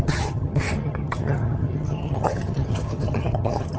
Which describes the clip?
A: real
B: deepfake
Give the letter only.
B